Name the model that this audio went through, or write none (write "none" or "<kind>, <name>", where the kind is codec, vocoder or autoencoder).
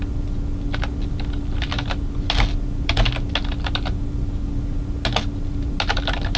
none